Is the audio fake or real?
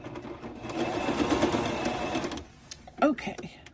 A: real